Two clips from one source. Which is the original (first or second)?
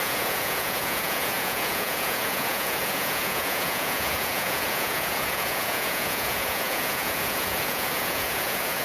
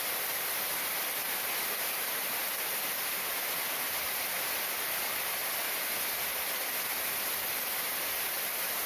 second